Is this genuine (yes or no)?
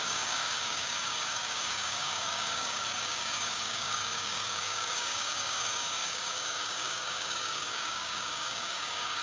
no